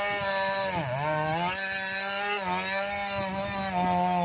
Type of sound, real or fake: real